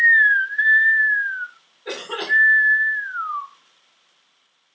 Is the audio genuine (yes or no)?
yes